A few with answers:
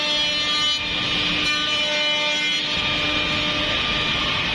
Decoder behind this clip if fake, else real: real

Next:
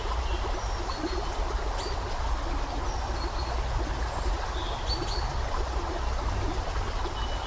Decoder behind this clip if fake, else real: real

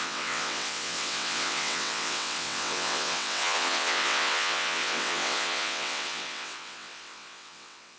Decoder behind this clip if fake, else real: fake, vocoder, WaveNeXt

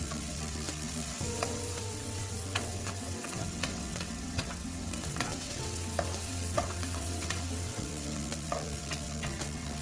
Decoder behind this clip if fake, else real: fake, vocoder, WaveNeXt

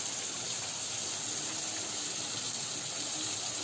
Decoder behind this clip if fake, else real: real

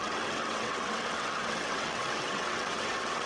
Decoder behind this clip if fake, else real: fake, vocoder, WaveNeXt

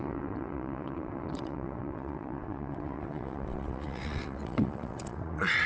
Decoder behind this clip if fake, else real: fake, vocoder, WaveNeXt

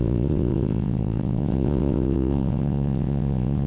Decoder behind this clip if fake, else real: fake, vocoder, WaveNeXt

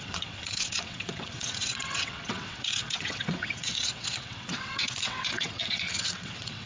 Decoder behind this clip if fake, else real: fake, vocoder, WaveNeXt